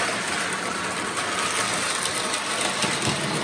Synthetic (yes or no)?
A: no